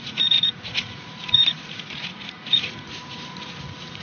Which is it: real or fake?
fake